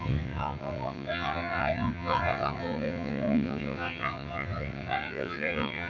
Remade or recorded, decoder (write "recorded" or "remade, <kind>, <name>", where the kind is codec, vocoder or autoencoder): remade, vocoder, WaveNeXt